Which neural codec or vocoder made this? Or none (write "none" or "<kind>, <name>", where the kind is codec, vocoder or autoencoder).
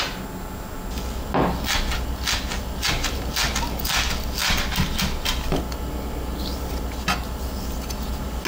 none